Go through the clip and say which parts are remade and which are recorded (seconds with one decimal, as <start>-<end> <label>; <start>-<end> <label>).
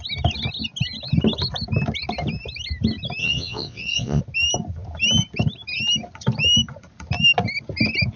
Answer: 0.0-3.2 recorded; 3.2-4.2 remade; 4.2-8.2 recorded